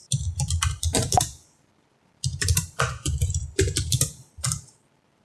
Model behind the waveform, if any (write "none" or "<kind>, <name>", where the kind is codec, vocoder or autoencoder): vocoder, BigVGAN v2